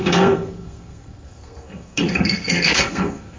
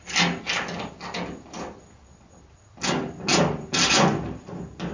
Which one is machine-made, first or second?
first